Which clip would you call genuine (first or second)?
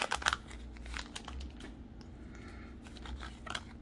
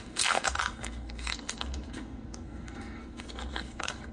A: first